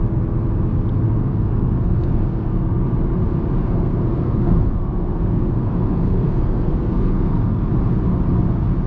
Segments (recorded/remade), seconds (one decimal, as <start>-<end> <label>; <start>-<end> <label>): 0.0-1.2 recorded; 1.2-2.8 remade; 2.8-3.6 recorded; 3.6-7.7 remade; 7.7-8.9 recorded